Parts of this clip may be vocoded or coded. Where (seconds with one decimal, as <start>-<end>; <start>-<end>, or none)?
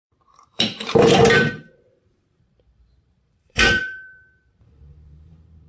0.0-5.7